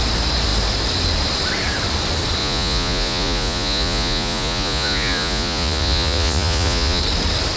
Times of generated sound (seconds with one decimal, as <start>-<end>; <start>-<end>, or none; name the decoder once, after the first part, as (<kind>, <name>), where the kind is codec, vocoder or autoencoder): 2.4-7.0 (vocoder, Vocos)